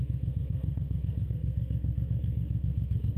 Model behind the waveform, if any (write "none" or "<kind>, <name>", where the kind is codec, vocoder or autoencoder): codec, SNAC